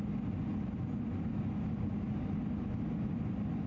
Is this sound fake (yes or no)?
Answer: no